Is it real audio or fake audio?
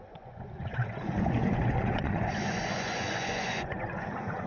fake